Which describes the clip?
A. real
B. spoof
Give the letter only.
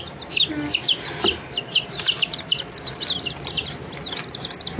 A